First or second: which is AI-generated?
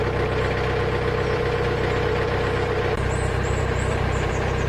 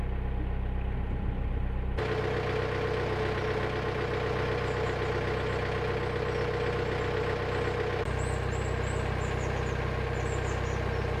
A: first